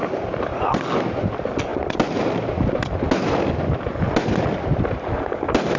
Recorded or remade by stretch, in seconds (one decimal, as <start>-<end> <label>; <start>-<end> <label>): 0.0-0.8 remade; 0.8-5.8 recorded